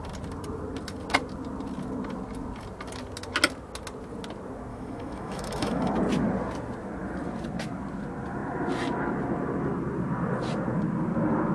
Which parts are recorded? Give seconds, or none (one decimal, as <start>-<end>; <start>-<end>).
0.0-4.7; 5.9-11.5